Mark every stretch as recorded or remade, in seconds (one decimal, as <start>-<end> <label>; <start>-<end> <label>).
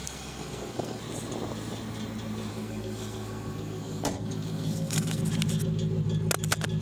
0.0-1.0 remade; 1.0-2.5 recorded; 2.5-5.2 remade; 5.2-6.8 recorded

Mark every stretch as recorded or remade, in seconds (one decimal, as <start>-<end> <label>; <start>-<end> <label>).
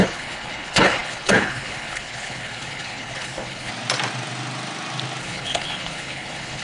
0.0-3.7 remade; 3.7-5.2 recorded; 5.2-6.6 remade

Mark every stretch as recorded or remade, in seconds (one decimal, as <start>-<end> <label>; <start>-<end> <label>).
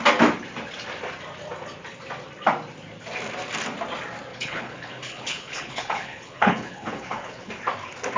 0.0-4.3 recorded; 4.3-7.5 remade; 7.5-8.2 recorded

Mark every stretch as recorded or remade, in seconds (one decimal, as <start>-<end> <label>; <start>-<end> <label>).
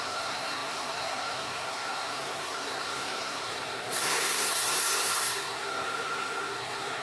0.0-7.0 remade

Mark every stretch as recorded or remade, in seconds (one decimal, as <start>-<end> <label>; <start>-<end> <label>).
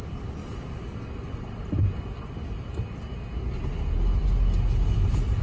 0.0-5.4 recorded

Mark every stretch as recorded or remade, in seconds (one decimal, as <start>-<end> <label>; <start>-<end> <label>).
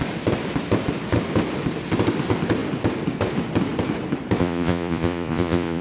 0.0-4.4 recorded; 4.4-5.8 remade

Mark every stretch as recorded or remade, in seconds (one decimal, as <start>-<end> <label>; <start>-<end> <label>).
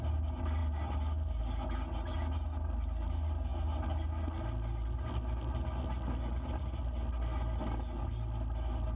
0.0-9.0 recorded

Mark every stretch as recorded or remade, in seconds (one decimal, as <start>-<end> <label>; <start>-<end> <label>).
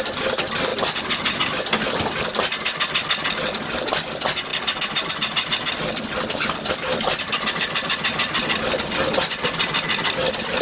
0.0-10.6 recorded